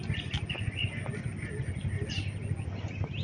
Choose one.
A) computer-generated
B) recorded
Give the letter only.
B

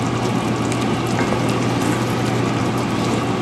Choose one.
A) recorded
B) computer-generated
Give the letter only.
A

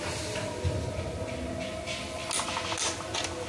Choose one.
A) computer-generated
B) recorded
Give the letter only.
B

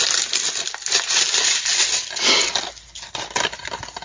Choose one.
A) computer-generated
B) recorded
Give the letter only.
B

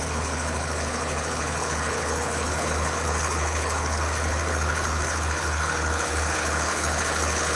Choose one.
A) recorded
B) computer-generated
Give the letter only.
B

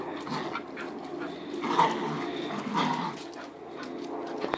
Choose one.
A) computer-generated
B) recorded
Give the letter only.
B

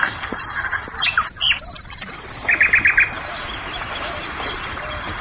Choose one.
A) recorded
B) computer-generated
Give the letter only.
A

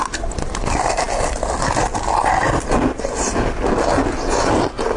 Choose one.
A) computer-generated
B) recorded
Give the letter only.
B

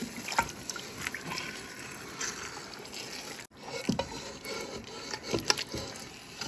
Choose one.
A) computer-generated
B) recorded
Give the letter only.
B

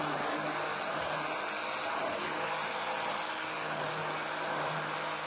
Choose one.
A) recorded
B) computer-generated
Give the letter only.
A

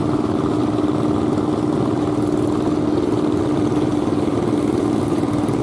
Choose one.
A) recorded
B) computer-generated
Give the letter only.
A